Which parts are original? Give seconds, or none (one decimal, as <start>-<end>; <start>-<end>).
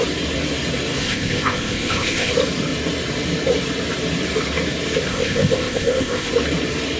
0.0-1.0; 2.3-5.1; 6.3-7.0